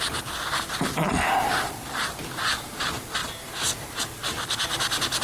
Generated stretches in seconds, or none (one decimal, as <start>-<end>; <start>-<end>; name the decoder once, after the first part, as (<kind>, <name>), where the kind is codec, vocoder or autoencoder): none